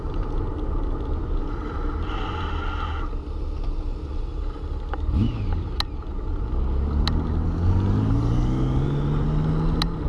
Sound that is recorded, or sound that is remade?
recorded